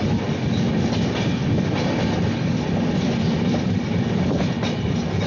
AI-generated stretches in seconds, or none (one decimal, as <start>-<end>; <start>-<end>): none